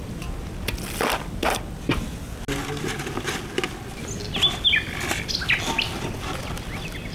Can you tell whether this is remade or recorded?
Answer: recorded